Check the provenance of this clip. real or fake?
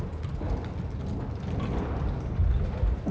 real